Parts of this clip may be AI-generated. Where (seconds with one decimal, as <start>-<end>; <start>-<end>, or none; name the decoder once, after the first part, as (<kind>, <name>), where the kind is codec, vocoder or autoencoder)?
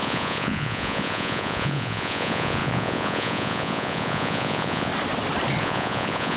0.0-4.9 (vocoder, Vocos); 5.6-6.4